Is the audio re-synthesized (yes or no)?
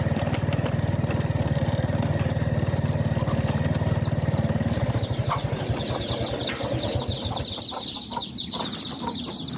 no